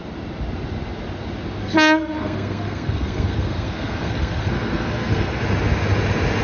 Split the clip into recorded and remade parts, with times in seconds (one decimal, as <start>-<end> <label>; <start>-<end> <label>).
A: 0.0-1.6 recorded; 1.6-5.4 remade; 5.4-6.4 recorded

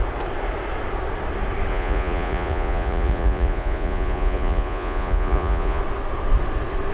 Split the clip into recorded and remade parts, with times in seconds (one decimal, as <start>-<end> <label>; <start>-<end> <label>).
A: 0.0-1.7 recorded; 1.7-5.8 remade; 5.8-6.9 recorded

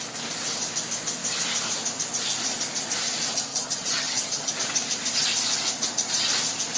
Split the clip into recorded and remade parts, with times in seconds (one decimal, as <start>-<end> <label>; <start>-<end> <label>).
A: 0.0-3.5 recorded; 3.5-4.5 remade; 4.5-6.8 recorded

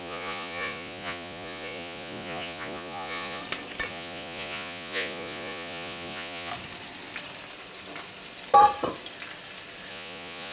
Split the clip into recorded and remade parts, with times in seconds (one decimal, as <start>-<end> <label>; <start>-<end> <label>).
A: 0.0-3.4 remade; 3.4-3.9 recorded; 3.9-6.5 remade; 6.5-9.9 recorded; 9.9-10.5 remade

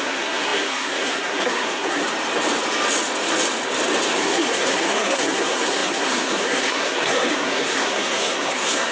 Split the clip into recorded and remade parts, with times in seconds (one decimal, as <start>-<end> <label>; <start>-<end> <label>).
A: 0.0-2.0 remade; 2.0-4.1 recorded; 4.1-8.9 remade